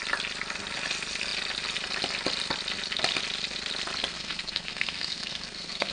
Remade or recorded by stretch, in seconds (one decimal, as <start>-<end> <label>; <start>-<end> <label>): 0.0-4.1 recorded; 4.1-5.9 remade